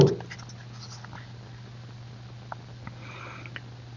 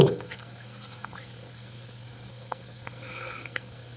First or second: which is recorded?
first